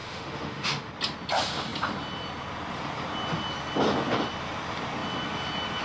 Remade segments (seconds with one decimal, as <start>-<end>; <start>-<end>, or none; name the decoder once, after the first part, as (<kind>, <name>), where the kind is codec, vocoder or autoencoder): 0.0-0.9 (autoencoder, DAC-VAE)